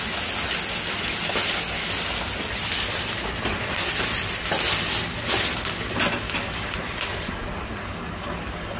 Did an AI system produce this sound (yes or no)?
no